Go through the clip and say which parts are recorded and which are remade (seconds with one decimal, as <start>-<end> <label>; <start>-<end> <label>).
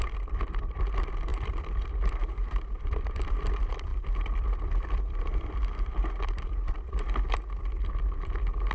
0.0-8.7 remade